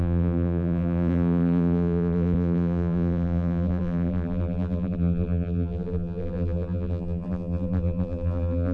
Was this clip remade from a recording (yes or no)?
yes